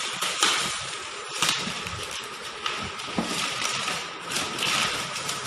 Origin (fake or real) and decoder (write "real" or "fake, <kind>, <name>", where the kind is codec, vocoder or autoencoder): fake, vocoder, BigVGAN v2